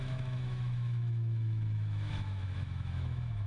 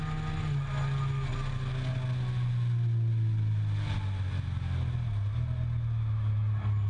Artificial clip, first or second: first